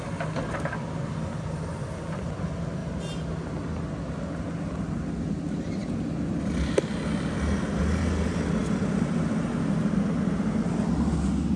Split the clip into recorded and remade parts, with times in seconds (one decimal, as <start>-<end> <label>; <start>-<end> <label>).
0.0-11.6 recorded